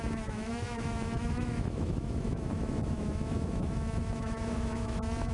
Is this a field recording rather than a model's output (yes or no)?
no